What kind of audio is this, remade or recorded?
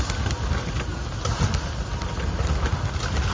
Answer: recorded